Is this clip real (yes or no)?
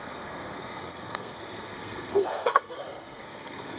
no